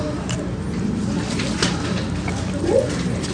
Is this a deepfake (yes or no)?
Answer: yes